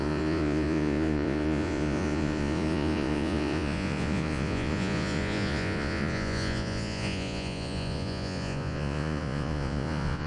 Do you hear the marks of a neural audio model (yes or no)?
yes